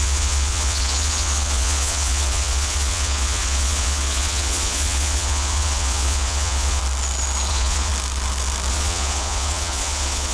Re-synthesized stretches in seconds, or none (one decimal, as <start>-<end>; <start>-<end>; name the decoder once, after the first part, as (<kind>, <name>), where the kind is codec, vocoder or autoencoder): 0.0-6.8 (vocoder, Vocos); 7.5-7.9; 8.7-10.3